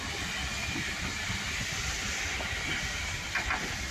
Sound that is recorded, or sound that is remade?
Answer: recorded